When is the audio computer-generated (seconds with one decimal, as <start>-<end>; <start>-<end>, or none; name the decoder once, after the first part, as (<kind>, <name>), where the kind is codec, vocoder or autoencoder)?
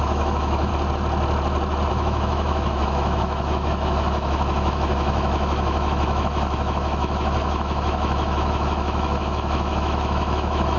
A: 0.0-0.7 (autoencoder, DAC-VAE); 1.9-10.8